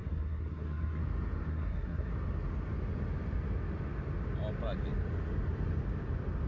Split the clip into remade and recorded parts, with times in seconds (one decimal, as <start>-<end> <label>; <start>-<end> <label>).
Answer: 0.0-1.0 remade; 1.0-1.5 recorded; 1.5-2.1 remade; 2.1-6.5 recorded